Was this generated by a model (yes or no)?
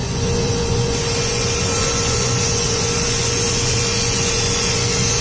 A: yes